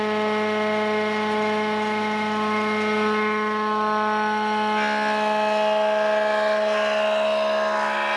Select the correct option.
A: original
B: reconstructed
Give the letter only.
A